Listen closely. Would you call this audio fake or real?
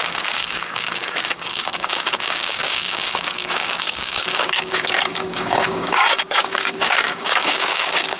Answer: fake